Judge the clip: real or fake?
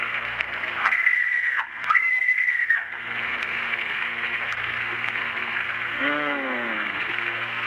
fake